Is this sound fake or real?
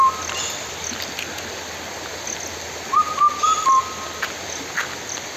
real